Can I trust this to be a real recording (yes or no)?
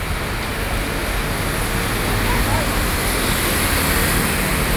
yes